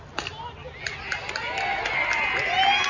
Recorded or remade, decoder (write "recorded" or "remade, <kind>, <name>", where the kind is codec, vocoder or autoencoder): recorded